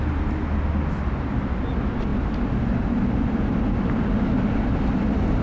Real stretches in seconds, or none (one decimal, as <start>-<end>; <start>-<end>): 0.0-5.4